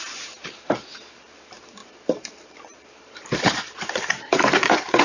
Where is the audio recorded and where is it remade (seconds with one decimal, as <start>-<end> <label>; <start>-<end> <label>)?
0.0-5.0 remade